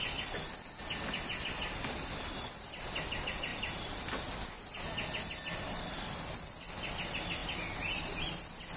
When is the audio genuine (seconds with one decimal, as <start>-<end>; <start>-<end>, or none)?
0.0-8.8